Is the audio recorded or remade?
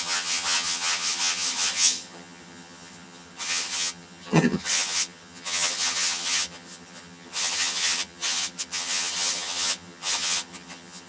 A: remade